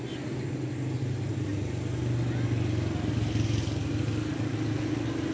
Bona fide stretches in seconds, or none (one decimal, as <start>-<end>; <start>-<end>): 0.0-5.3